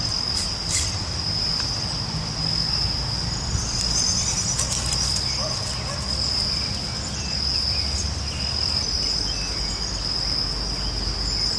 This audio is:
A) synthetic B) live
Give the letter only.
B